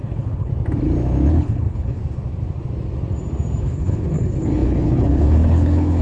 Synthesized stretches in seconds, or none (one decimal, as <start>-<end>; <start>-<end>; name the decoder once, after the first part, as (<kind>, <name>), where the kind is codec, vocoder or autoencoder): 0.0-0.5 (codec, HILCodec); 1.3-2.0; 3.6-6.0